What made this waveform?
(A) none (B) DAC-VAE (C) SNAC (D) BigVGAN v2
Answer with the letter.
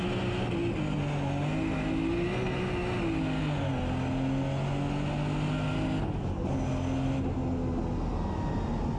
A